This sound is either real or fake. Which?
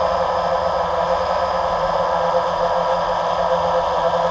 real